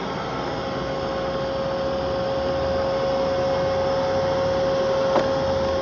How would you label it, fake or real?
real